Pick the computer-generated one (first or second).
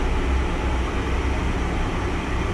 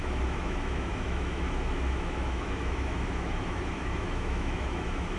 second